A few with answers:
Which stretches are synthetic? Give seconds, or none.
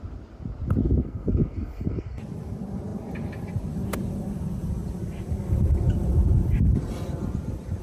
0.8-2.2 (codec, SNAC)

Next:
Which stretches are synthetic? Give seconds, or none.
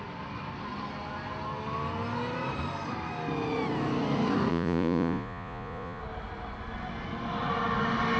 4.5-6.0 (vocoder, Vocos)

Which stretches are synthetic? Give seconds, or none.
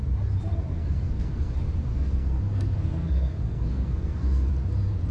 0.7-1.5 (codec, SNAC); 1.9-4.5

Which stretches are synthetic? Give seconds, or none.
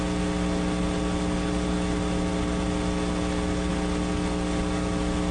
none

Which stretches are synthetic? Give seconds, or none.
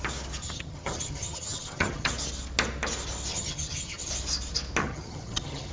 0.4-2.1 (vocoder, HiFi-GAN); 3.3-4.1; 4.8-5.7